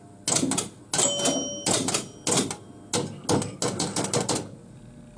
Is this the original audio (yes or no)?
yes